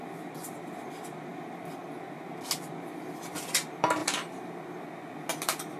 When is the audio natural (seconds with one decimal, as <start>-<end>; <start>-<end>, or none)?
0.0-5.8

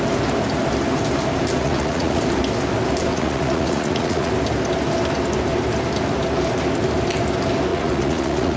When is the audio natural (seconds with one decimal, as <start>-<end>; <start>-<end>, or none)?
0.0-1.6; 2.2-3.1; 4.3-7.7

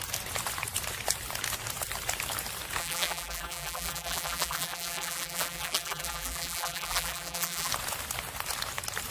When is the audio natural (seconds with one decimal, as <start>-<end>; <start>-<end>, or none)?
0.0-2.8; 7.7-9.1

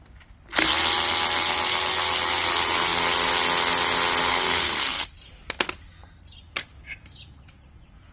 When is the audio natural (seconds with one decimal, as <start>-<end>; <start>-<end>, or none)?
0.0-4.3; 5.0-8.1